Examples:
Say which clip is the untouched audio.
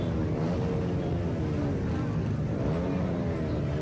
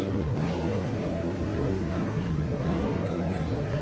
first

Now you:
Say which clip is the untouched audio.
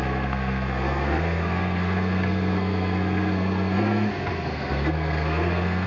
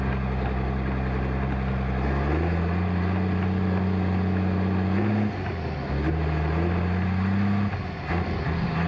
second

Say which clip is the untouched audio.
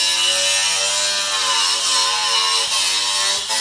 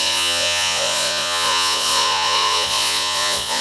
first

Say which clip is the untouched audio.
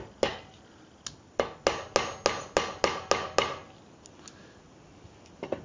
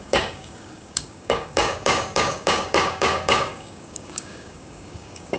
first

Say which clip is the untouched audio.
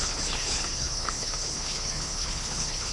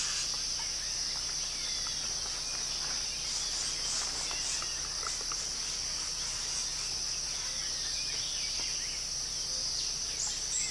second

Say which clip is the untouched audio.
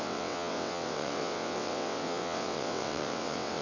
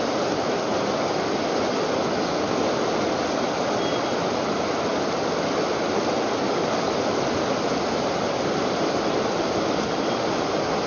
second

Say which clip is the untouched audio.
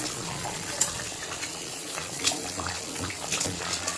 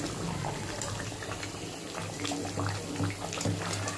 second